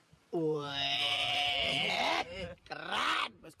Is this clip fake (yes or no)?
yes